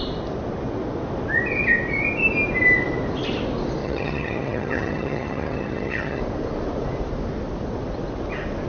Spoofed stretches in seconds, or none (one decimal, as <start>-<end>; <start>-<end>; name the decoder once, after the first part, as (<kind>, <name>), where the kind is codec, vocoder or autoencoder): 3.8-6.2 (vocoder, HiFi-GAN)